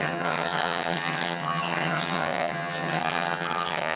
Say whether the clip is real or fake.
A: fake